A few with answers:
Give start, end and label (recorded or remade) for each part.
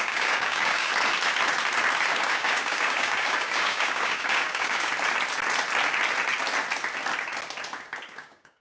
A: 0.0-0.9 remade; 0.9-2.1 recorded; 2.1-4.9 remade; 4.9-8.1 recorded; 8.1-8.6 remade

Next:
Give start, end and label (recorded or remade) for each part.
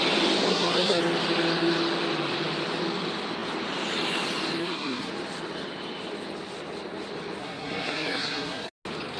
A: 0.0-0.5 recorded; 0.5-1.0 remade; 1.0-4.6 recorded; 4.6-5.1 remade; 5.1-7.4 recorded; 7.4-8.7 remade; 8.7-9.2 recorded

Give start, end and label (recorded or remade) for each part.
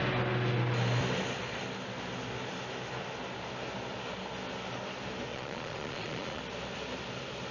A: 0.0-5.3 recorded; 5.3-6.4 remade; 6.4-7.5 recorded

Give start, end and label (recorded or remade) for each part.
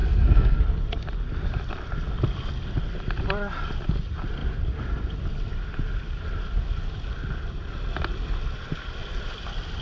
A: 0.0-0.6 remade; 0.6-9.8 recorded